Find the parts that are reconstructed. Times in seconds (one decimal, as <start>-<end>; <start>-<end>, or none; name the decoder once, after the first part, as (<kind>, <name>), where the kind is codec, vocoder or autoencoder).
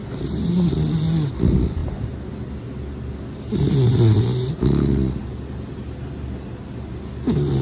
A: none